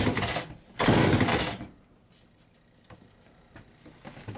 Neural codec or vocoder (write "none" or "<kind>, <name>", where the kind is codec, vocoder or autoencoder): none